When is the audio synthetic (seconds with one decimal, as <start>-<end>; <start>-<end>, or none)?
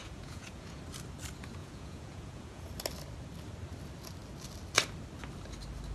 0.0-0.8; 1.6-2.7